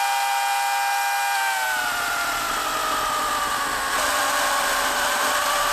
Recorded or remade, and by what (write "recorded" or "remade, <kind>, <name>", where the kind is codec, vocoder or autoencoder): recorded